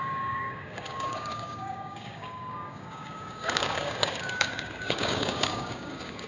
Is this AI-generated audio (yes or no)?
yes